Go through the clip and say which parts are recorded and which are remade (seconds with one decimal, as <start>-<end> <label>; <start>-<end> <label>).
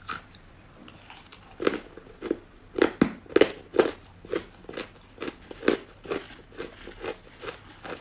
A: 0.0-8.0 recorded